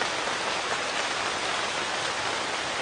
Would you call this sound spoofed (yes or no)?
no